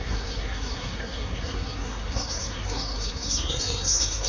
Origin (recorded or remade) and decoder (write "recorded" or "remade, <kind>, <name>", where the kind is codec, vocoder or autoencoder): remade, codec, SNAC